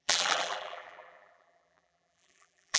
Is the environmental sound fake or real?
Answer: fake